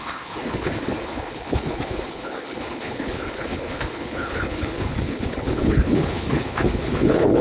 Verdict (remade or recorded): remade